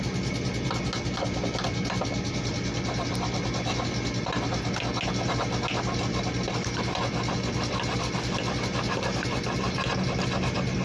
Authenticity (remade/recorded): recorded